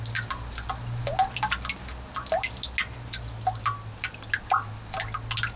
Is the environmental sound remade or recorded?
recorded